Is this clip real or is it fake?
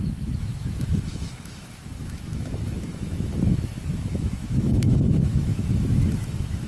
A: fake